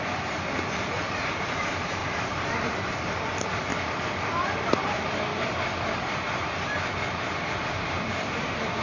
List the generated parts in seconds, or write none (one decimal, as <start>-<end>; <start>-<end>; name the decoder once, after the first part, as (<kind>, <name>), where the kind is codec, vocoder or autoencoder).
0.0-3.7 (vocoder, BigVGAN v2); 4.4-5.3; 7.6-8.8